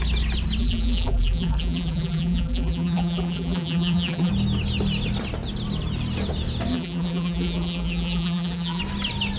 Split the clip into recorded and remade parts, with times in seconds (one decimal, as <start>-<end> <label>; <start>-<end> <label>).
0.0-0.6 recorded; 0.6-4.3 remade; 4.3-6.7 recorded; 6.7-8.8 remade; 8.8-9.4 recorded